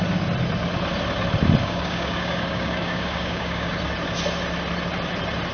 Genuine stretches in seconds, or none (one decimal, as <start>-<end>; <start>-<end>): 0.0-1.6; 3.7-5.5